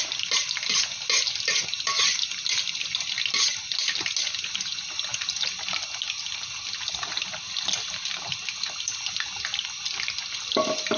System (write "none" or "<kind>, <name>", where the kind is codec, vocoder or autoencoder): none